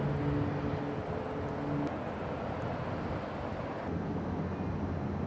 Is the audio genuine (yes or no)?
yes